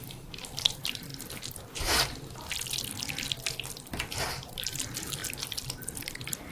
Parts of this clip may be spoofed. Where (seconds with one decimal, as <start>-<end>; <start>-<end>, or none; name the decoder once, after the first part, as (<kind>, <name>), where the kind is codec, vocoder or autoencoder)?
0.0-1.1 (vocoder, BigVGAN v2); 4.3-5.2